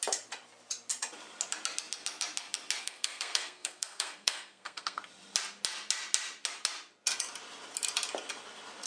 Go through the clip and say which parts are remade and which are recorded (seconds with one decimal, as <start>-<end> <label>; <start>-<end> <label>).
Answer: 0.0-2.8 recorded; 2.8-5.0 remade; 5.0-8.9 recorded